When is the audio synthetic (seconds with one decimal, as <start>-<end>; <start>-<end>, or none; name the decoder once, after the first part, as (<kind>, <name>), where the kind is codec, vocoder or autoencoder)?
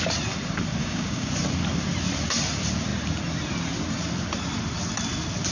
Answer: 0.8-1.3 (codec, DAC)